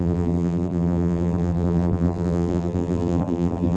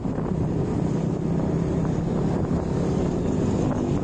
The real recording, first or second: second